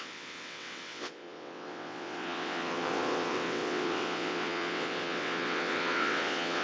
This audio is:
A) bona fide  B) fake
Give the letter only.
B